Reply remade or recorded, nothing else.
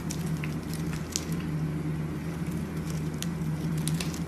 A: recorded